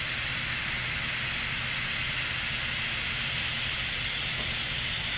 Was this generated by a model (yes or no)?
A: no